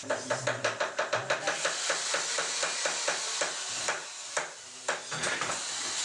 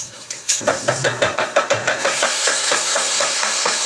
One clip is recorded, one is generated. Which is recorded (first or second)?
first